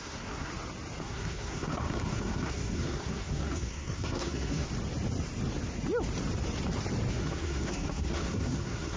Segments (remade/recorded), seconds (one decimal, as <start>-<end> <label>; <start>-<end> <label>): 0.0-0.5 remade; 0.5-1.0 recorded; 1.0-4.7 remade; 4.7-7.1 recorded; 7.1-9.0 remade